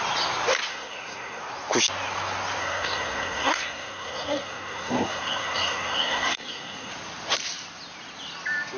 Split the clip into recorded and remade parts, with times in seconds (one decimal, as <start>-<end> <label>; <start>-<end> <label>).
0.0-0.7 recorded; 0.7-1.4 remade; 1.4-2.6 recorded; 2.6-6.9 remade; 6.9-8.8 recorded